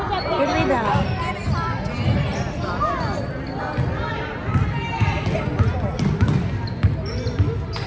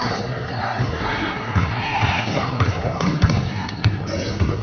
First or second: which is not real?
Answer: second